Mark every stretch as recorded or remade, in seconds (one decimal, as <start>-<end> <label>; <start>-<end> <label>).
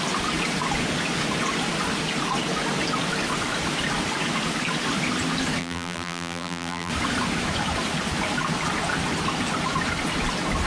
0.0-5.6 recorded; 5.6-6.9 remade; 6.9-10.7 recorded